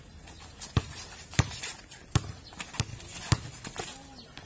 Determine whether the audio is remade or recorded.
recorded